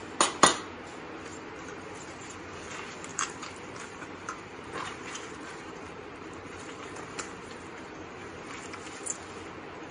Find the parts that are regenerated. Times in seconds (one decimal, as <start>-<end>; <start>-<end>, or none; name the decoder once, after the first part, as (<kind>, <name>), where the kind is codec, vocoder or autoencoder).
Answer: 1.3-2.1 (vocoder, BigVGAN v2); 3.1-8.3